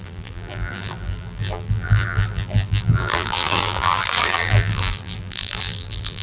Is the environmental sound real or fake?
fake